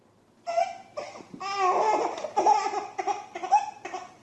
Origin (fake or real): real